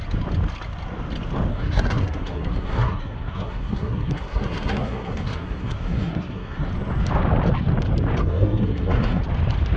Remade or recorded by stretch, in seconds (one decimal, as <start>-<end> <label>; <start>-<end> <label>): 0.0-1.5 recorded; 1.5-6.7 remade; 6.7-8.2 recorded; 8.2-9.2 remade; 9.2-9.8 recorded